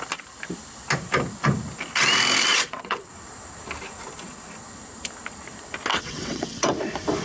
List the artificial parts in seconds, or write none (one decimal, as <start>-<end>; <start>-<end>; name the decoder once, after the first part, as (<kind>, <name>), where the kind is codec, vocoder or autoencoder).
2.5-3.1 (vocoder, WaveNeXt); 5.9-6.7